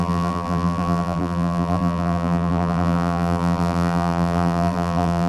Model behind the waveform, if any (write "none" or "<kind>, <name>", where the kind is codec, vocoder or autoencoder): vocoder, BigVGAN v2